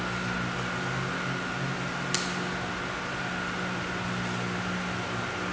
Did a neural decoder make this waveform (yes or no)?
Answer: no